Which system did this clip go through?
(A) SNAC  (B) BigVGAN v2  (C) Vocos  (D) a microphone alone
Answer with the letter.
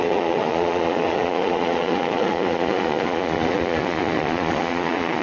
C